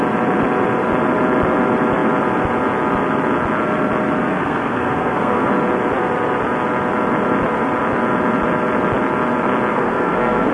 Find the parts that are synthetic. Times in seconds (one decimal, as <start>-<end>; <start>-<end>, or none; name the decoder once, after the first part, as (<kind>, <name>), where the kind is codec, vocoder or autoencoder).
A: 4.3-5.5 (codec, SNAC); 9.7-10.5